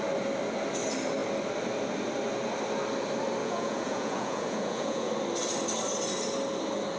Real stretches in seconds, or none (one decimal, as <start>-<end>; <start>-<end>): 0.0-3.4; 5.1-7.0